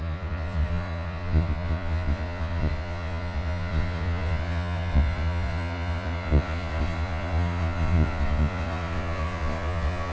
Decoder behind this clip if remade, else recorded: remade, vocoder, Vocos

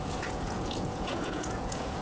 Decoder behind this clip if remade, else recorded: remade, vocoder, Vocos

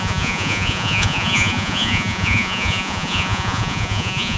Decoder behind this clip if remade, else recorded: remade, vocoder, Vocos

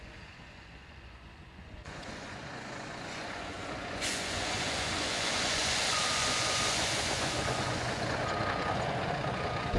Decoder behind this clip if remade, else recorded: remade, vocoder, Vocos